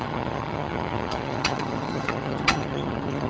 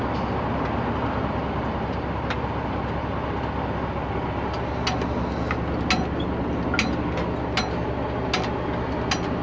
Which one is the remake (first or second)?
first